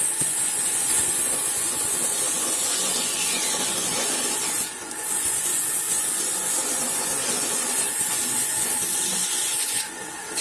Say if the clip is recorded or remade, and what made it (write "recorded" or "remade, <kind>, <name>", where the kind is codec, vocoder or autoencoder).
remade, vocoder, Vocos